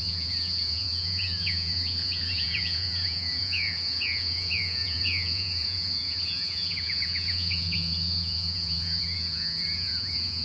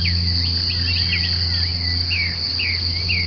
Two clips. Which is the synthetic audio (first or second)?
first